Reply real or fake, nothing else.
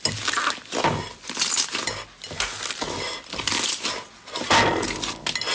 real